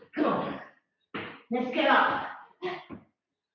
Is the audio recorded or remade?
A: recorded